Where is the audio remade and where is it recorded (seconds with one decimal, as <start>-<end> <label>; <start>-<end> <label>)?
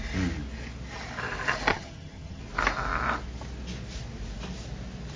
0.0-1.7 recorded; 1.7-2.4 remade; 2.4-5.2 recorded